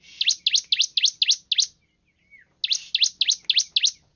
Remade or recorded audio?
recorded